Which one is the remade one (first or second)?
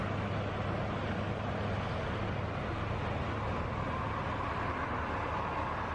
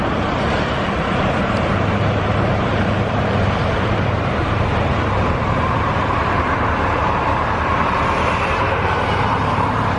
second